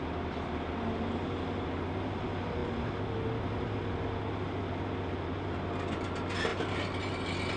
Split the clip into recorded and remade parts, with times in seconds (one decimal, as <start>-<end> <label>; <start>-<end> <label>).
0.0-7.6 recorded